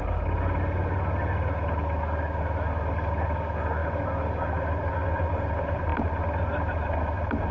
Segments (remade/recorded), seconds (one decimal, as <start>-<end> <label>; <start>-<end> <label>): 0.0-7.5 recorded